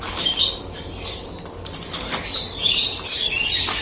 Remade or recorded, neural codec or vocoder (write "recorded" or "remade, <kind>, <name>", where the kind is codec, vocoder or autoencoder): recorded